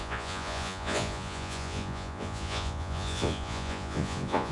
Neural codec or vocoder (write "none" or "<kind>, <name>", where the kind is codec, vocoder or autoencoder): vocoder, Vocos